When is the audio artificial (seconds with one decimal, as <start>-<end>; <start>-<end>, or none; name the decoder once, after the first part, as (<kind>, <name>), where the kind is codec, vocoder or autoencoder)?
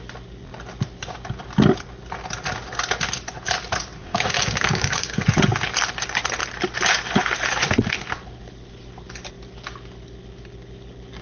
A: 4.0-5.2 (codec, DAC)